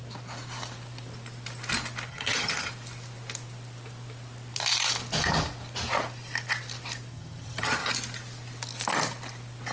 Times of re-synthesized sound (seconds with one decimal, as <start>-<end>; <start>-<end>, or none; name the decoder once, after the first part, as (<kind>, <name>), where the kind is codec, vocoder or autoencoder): 2.1-2.7 (vocoder, HiFi-GAN); 7.1-7.9